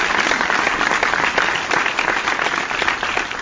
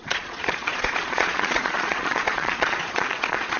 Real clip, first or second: first